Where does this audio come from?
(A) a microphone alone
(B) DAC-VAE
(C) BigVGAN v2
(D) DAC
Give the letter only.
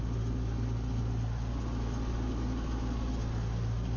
A